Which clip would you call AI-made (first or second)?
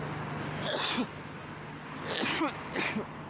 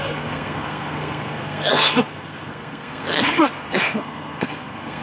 second